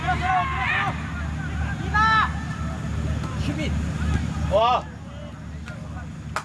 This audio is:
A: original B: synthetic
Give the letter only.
A